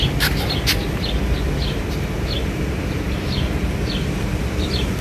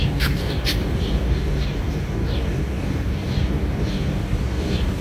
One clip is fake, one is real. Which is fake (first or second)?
second